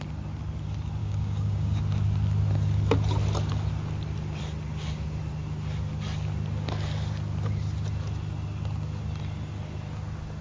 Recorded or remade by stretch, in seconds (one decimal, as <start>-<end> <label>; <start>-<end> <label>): 0.0-1.0 recorded; 1.0-1.8 remade; 1.8-10.4 recorded